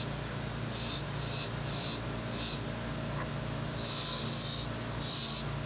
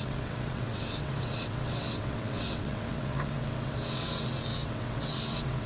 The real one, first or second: first